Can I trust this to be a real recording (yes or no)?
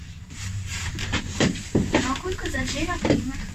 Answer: no